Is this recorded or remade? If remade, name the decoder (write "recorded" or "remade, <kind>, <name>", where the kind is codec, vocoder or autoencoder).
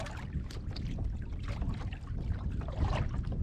recorded